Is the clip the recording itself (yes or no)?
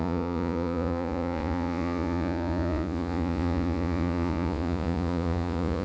no